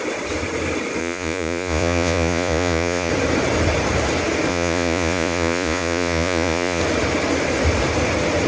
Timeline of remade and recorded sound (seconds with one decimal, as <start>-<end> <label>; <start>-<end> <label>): 0.0-1.0 recorded; 1.0-3.1 remade; 3.1-4.5 recorded; 4.5-6.8 remade; 6.8-8.5 recorded